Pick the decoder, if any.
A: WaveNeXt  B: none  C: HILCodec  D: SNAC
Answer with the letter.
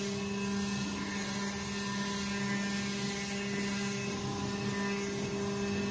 B